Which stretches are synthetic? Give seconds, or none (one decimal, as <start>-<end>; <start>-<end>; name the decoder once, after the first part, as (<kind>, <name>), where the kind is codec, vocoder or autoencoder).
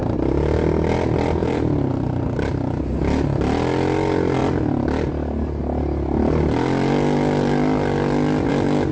1.4-1.9 (vocoder, BigVGAN v2)